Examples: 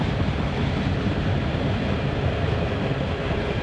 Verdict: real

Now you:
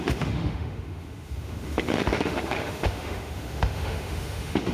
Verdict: fake